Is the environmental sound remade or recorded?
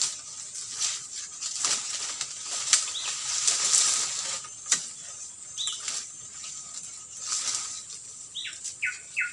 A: recorded